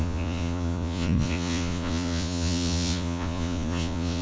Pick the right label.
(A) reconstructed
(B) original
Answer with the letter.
A